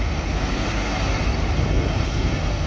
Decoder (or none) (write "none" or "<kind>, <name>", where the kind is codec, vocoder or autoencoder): none